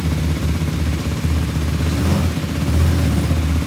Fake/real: real